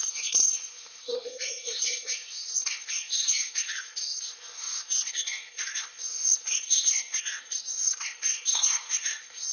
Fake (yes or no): yes